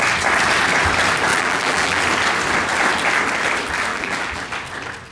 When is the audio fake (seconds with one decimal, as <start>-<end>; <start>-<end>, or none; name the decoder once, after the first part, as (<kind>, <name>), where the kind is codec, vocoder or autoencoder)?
1.3-2.0 (vocoder, BigVGAN v2); 3.9-4.4